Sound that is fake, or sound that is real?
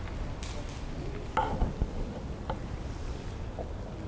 real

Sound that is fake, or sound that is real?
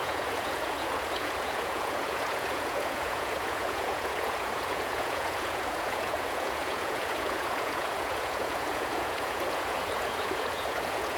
fake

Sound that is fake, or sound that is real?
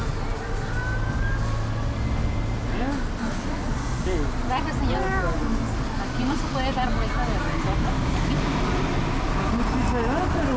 real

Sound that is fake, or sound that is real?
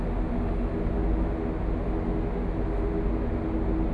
real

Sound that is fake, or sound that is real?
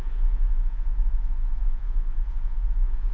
fake